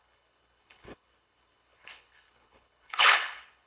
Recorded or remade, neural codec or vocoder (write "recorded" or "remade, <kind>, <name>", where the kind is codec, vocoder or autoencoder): remade, codec, HILCodec